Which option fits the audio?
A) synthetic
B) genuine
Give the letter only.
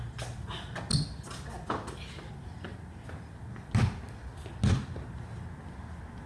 B